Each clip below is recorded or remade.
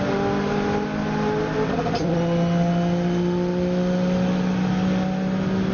recorded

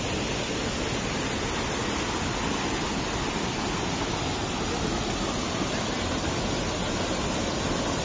recorded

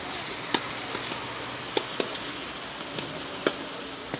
recorded